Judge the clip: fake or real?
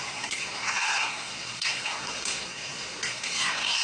fake